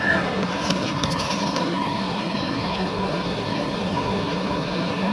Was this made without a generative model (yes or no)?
no